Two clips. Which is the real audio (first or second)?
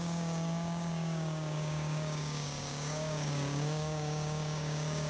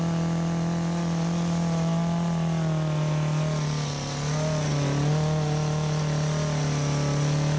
second